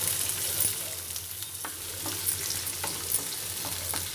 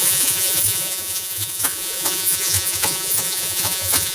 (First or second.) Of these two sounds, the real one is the first